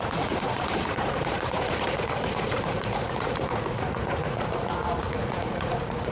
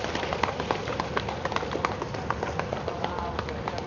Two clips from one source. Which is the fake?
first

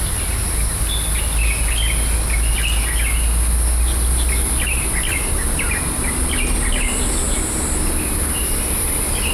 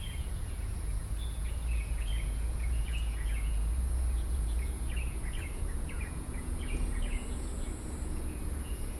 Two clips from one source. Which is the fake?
second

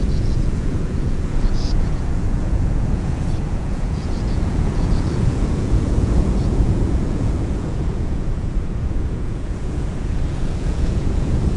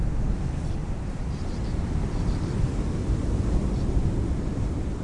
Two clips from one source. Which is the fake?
first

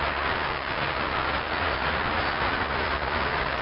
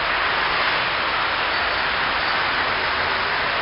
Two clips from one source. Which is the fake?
first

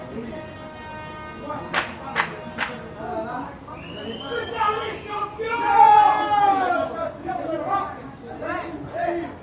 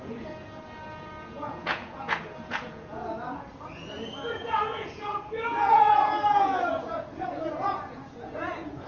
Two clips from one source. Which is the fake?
second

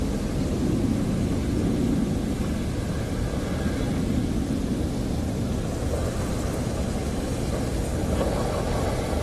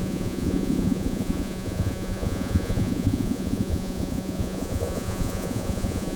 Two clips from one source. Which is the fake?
second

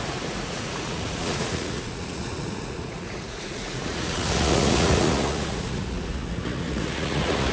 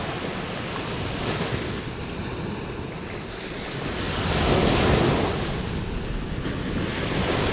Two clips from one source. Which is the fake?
first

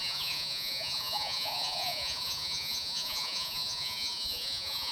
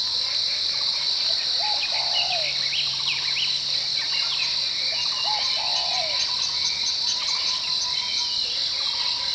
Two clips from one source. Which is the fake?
first